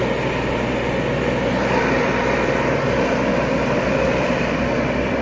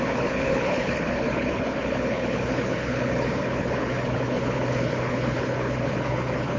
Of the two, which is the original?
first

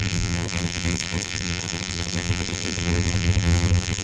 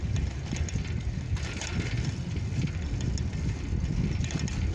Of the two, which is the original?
second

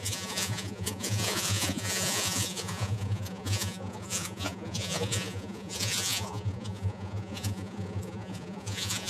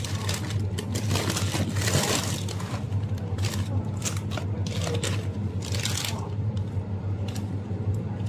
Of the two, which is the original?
second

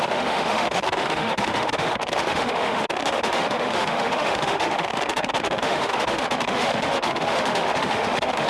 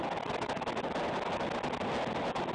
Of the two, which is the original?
second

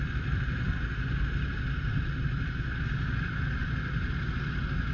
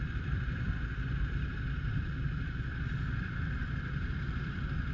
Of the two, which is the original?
first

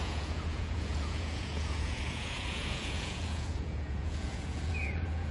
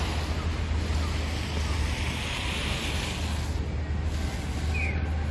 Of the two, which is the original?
second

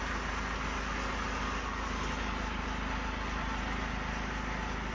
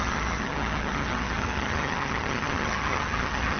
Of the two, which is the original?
first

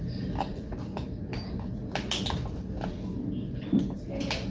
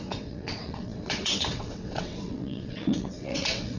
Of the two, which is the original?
first